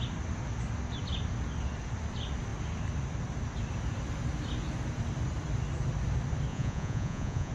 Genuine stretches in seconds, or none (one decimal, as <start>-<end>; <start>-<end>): 0.0-6.5